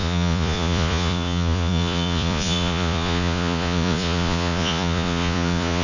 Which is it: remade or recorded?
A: remade